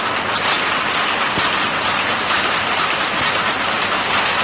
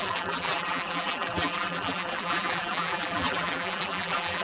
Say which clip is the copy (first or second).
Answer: second